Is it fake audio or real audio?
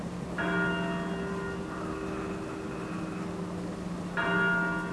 real